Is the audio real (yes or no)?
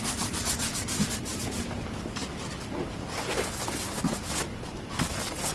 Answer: yes